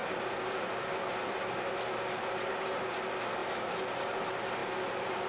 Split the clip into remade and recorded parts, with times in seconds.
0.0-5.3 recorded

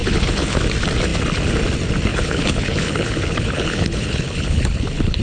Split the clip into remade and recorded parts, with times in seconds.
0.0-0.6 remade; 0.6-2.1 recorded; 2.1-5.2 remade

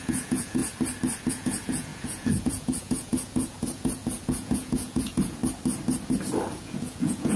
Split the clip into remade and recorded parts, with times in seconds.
0.0-0.6 remade; 0.6-1.3 recorded; 1.3-5.4 remade; 5.4-6.6 recorded; 6.6-7.4 remade

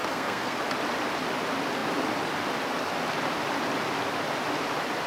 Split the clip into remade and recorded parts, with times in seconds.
0.0-0.6 remade; 0.6-5.1 recorded

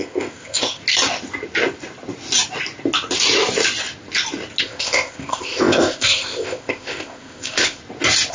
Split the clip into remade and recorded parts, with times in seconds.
0.0-0.8 remade; 0.8-4.6 recorded; 4.6-7.8 remade; 7.8-8.3 recorded

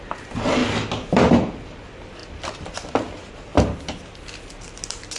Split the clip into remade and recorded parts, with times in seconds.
0.0-5.2 recorded

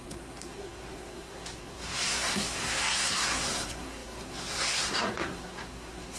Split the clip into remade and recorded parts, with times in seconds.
0.0-6.2 remade